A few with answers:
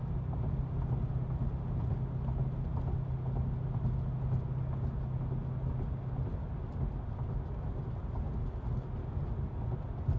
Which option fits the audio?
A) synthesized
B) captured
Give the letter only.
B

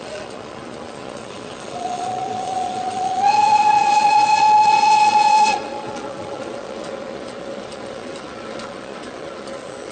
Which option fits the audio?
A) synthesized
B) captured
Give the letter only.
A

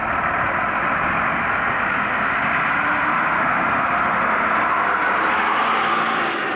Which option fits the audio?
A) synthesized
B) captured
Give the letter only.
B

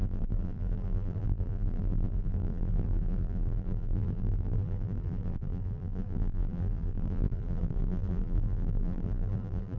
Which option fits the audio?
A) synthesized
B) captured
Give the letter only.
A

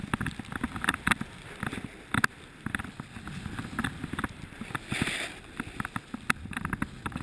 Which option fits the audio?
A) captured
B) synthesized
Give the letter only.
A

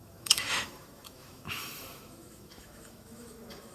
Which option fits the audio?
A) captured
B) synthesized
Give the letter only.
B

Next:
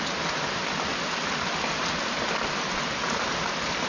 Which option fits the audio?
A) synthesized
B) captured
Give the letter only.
B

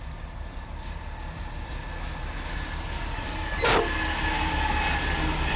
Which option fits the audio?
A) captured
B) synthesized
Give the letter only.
A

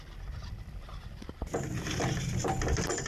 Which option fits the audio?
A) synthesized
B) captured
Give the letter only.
B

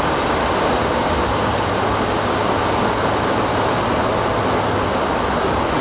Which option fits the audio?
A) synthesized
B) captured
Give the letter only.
B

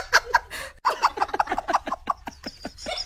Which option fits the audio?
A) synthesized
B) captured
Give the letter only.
B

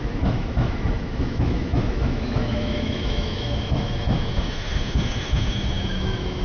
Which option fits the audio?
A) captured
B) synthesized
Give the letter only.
B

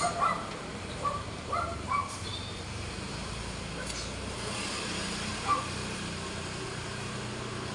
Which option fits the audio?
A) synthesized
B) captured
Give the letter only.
A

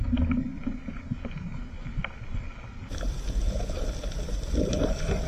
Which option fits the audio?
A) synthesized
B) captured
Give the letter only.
A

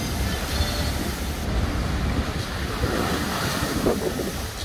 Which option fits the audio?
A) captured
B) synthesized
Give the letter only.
A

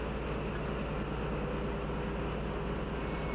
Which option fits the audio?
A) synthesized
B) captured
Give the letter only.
B